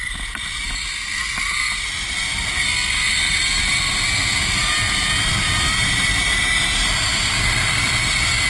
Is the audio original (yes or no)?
yes